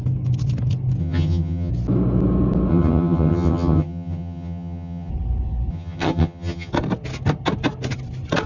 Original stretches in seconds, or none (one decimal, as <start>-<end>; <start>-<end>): 0.0-1.0; 1.7-2.7; 5.1-5.7; 6.7-8.5